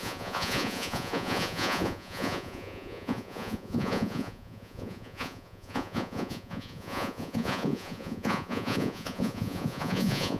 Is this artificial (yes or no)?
yes